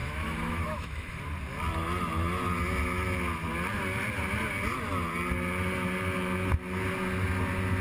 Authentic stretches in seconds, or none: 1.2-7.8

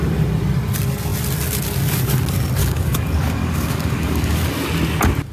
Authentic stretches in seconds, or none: 0.0-2.6; 4.5-5.3